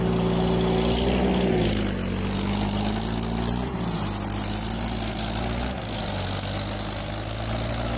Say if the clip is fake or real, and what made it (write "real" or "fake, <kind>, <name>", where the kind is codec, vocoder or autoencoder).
real